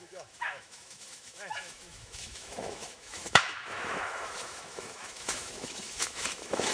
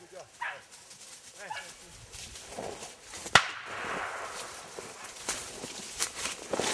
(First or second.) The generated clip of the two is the first